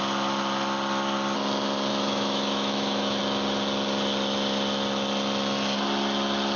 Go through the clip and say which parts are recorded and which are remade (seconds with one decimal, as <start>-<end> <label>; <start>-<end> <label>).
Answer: 0.0-1.9 recorded; 1.9-3.2 remade; 3.2-6.6 recorded